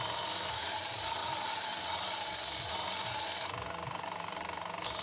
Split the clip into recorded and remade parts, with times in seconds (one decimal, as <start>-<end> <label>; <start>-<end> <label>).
0.0-5.0 recorded